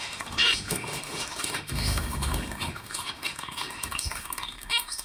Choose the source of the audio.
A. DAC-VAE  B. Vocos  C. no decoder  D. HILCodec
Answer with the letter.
A